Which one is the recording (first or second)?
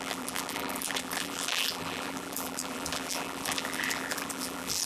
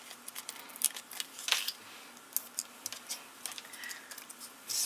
second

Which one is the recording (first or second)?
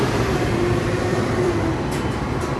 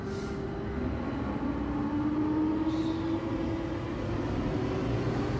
second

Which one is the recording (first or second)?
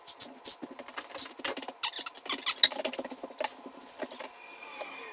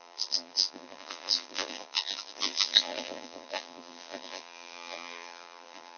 first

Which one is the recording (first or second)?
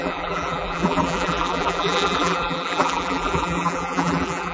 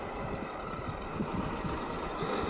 second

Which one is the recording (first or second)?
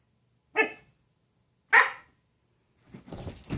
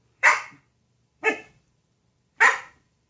first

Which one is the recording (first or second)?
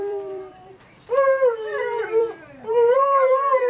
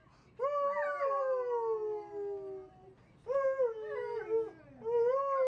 second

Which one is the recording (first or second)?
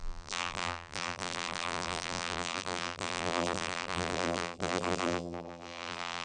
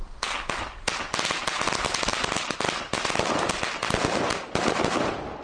second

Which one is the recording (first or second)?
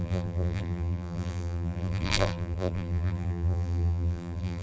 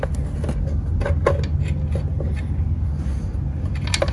second